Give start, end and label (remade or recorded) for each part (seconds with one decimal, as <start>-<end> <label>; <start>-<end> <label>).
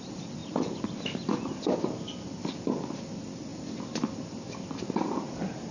0.0-5.7 recorded